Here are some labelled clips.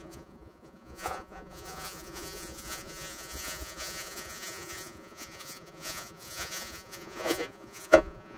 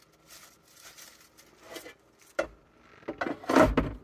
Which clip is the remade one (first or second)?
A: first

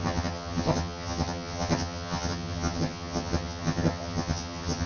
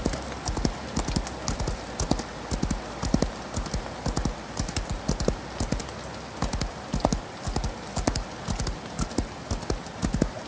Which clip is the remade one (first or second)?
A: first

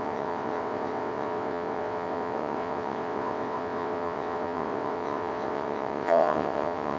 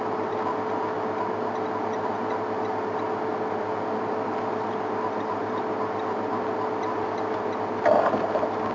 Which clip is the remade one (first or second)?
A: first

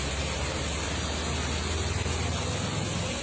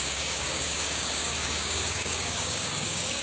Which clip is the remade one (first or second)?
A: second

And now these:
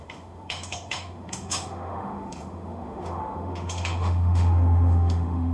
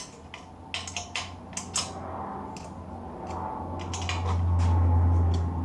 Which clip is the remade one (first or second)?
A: first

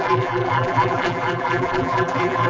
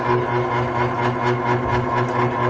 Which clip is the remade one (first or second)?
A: first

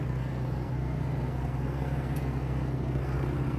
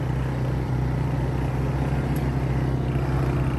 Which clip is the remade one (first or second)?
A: first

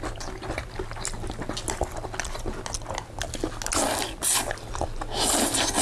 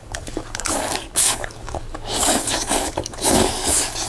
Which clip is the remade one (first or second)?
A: second